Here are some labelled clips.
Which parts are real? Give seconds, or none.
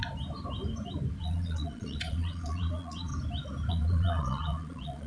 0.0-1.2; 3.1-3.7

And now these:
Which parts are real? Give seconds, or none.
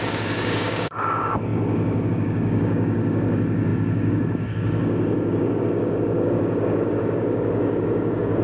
none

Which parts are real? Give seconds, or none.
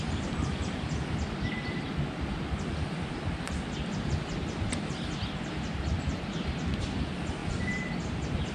0.0-8.5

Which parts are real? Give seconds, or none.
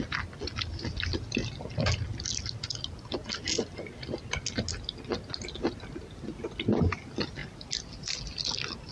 0.0-8.9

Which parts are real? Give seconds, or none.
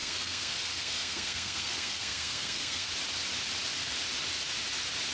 2.9-5.1